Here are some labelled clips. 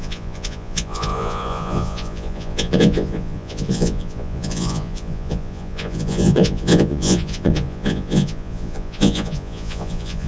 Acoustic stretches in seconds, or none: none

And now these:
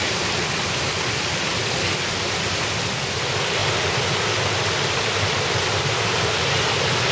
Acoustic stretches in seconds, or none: 0.0-7.1

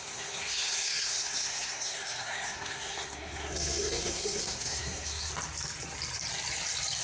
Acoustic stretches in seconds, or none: 5.3-7.0

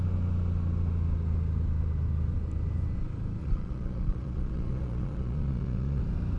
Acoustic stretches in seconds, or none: 0.0-3.4; 6.0-6.4

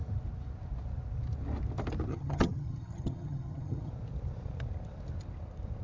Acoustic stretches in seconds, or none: 0.0-2.1; 3.9-5.8